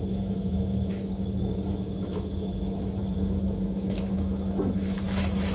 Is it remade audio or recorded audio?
remade